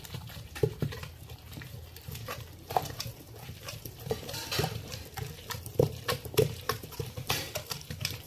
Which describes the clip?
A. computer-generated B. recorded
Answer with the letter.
A